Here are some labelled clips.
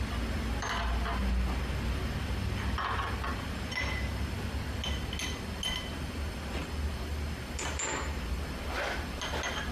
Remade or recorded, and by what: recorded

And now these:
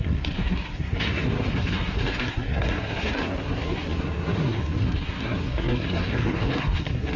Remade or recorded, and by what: remade, codec, SNAC